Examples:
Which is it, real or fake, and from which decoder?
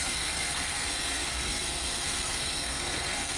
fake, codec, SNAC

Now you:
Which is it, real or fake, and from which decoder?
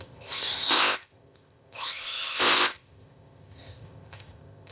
fake, codec, ZipCodec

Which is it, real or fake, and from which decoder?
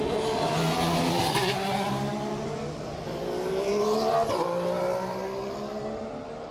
real